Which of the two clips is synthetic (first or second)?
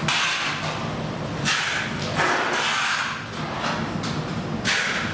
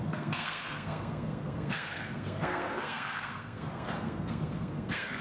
second